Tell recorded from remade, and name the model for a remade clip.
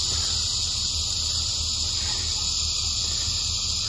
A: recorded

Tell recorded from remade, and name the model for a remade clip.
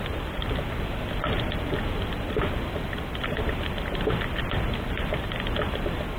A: recorded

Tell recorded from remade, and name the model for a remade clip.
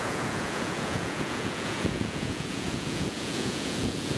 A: remade, vocoder, Vocos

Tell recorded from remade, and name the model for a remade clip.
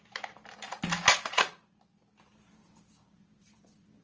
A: recorded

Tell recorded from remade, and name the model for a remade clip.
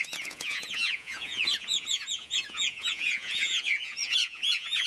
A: remade, vocoder, Vocos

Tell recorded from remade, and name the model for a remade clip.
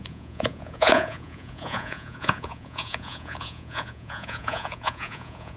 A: remade, vocoder, Vocos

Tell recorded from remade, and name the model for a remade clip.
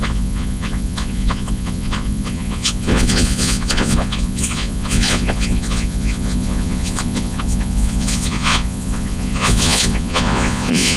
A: remade, vocoder, Vocos